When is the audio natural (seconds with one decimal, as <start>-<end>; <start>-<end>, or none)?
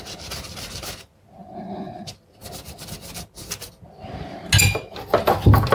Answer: 0.0-5.7